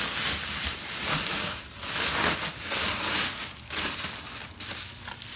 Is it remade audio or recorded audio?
recorded